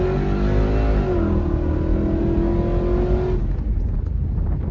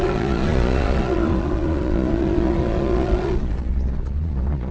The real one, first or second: first